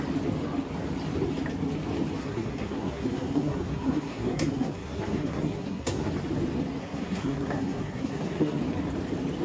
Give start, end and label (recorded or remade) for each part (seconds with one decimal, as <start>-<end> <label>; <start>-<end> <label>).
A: 0.0-2.2 recorded; 2.2-6.1 remade; 6.1-6.8 recorded; 6.8-8.6 remade; 8.6-9.4 recorded